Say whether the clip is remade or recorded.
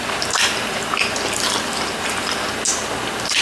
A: recorded